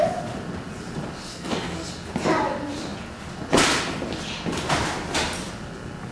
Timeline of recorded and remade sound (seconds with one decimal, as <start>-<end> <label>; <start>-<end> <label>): 0.0-1.3 recorded; 1.3-1.9 remade; 1.9-6.1 recorded